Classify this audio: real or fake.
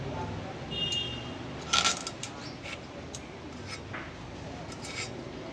real